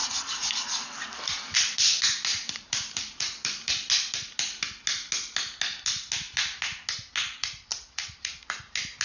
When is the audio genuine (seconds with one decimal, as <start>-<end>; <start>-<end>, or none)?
0.0-2.3; 3.9-7.7; 8.6-9.0